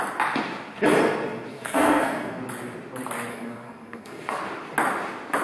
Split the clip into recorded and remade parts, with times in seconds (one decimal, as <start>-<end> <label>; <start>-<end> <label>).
0.0-1.5 recorded; 1.5-2.4 remade; 2.4-3.3 recorded; 3.3-4.4 remade; 4.4-5.4 recorded